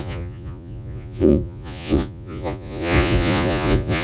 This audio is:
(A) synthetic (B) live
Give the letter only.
A